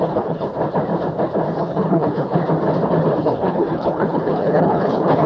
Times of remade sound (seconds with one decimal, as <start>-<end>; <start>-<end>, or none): 0.0-0.5; 1.6-2.4; 3.2-5.3